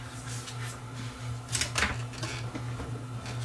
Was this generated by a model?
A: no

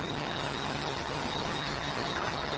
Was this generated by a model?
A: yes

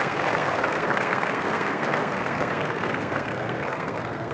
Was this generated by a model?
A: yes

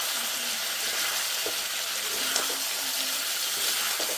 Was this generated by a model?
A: no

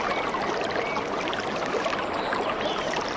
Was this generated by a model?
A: no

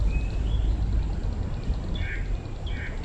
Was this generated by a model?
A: no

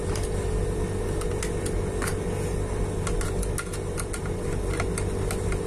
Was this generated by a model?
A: no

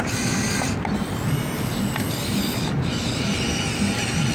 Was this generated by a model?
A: yes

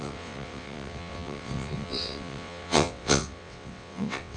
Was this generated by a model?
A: yes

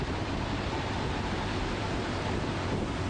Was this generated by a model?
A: yes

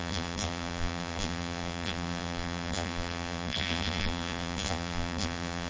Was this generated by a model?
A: yes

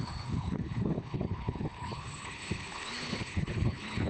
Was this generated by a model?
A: yes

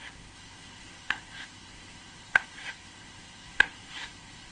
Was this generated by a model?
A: yes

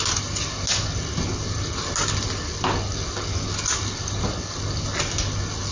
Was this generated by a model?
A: no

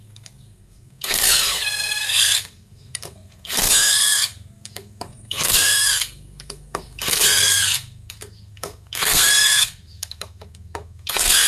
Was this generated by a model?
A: yes